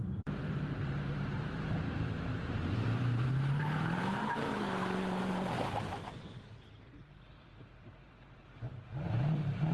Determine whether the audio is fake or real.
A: fake